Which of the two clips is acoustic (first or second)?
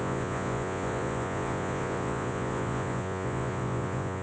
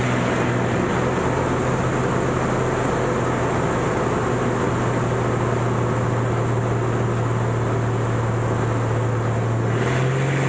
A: second